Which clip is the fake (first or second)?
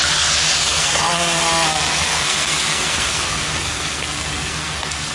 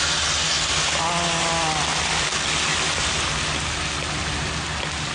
first